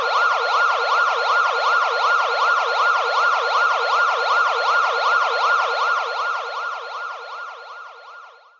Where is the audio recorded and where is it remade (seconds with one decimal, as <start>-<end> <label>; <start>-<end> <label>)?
0.0-8.6 recorded